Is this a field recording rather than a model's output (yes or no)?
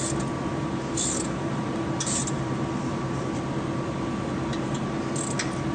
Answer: yes